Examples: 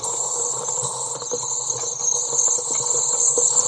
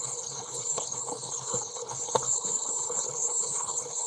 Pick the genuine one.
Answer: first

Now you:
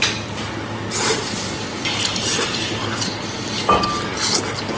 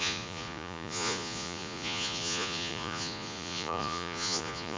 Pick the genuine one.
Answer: first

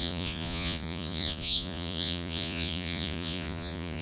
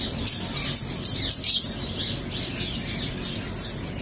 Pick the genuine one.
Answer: second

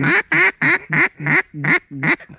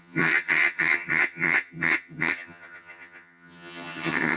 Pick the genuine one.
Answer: first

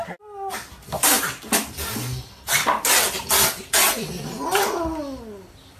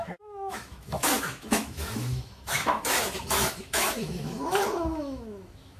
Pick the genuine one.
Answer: first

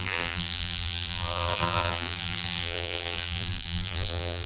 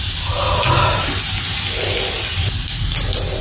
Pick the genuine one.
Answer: second